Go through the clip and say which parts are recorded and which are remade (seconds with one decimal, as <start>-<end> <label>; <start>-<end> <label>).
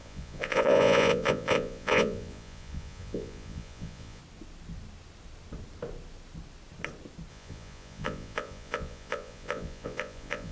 0.0-4.2 remade; 4.2-7.3 recorded; 7.3-10.5 remade